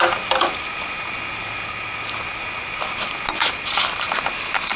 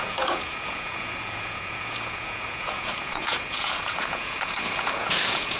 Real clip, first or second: first